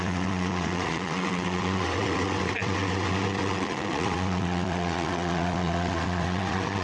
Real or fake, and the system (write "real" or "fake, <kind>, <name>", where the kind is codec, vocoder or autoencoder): fake, vocoder, WaveNeXt